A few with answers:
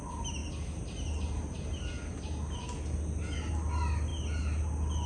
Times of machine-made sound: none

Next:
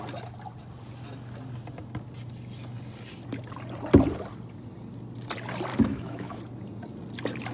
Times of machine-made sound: 5.7-6.4 (autoencoder, DAC-VAE)

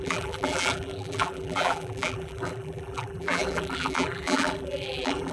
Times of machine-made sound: 0.0-5.3 (vocoder, BigVGAN v2)

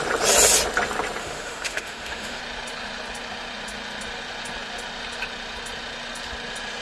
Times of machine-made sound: 1.2-2.4 (autoencoder, DAC-VAE)

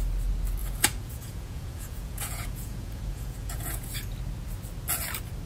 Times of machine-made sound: 0.6-3.9 (vocoder, Vocos)

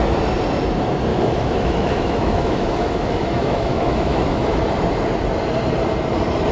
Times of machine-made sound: 1.1-4.6 (autoencoder, DAC-VAE)